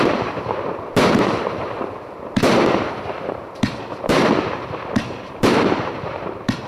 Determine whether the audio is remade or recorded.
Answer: remade